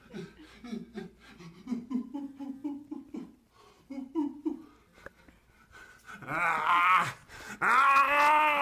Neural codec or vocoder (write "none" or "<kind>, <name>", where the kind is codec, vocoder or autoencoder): none